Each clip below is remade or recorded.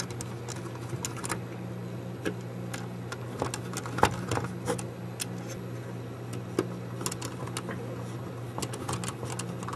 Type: recorded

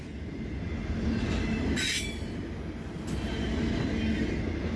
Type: recorded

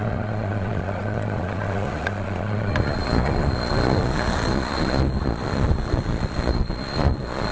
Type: remade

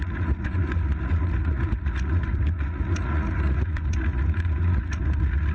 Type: remade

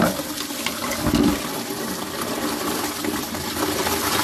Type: recorded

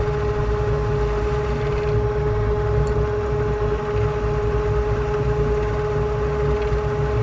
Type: recorded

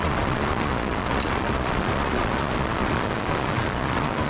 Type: remade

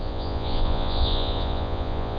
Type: remade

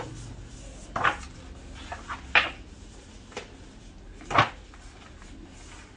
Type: recorded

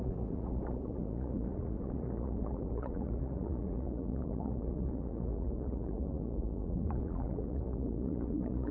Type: remade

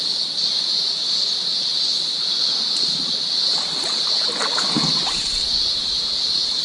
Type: recorded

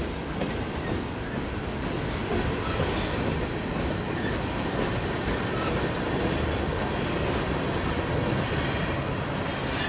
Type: recorded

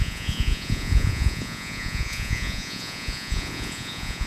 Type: remade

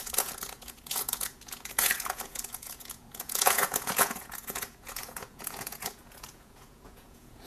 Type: remade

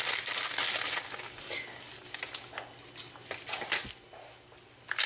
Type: recorded